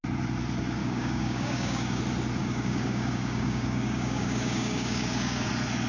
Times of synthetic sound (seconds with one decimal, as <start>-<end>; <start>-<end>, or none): 0.8-2.0; 2.4-5.5

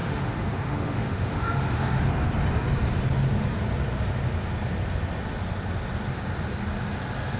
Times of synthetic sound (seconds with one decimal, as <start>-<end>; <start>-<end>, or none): 0.0-2.0